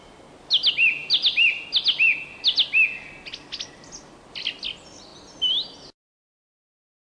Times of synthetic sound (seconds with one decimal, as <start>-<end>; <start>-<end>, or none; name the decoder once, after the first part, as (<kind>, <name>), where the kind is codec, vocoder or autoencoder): none